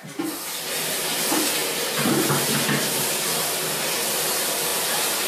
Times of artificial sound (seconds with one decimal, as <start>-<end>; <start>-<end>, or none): none